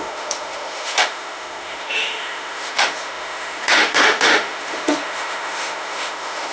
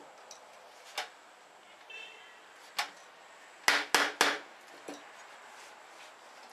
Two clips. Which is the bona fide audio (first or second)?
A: second